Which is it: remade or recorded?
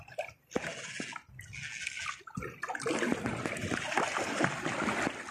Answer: recorded